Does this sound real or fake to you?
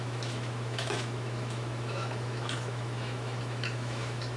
fake